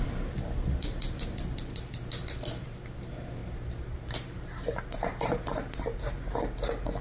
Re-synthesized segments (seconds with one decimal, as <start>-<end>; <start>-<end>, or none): 3.4-6.0